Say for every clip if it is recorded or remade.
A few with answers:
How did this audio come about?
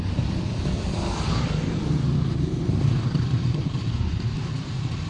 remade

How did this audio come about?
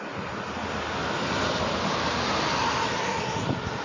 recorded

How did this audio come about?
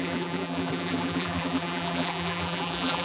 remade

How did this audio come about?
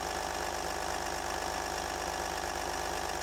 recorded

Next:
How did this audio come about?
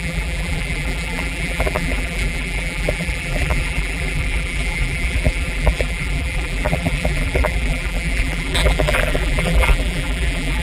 remade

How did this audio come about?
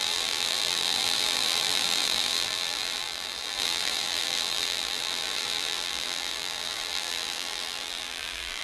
remade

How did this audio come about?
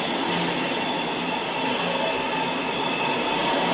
recorded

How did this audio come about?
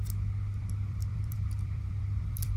remade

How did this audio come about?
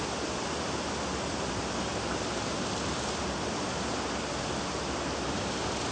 recorded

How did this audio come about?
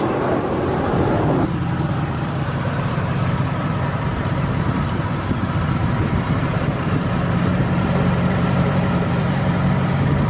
remade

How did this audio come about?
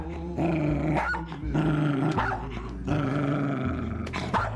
remade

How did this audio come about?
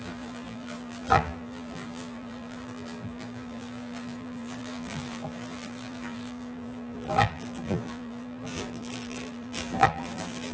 remade